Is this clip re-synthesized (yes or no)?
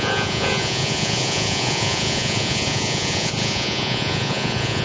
yes